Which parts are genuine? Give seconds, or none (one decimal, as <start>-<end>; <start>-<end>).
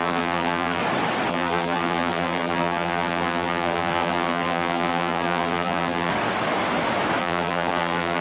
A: 0.8-1.3; 6.1-7.2